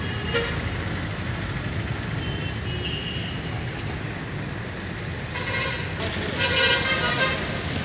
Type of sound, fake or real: real